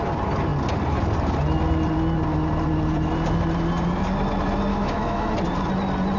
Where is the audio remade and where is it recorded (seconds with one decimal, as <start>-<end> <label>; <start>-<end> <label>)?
0.0-4.7 recorded; 4.7-5.3 remade; 5.3-6.2 recorded